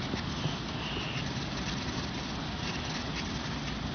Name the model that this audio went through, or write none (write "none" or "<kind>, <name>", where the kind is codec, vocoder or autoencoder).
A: none